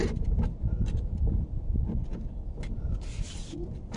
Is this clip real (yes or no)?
yes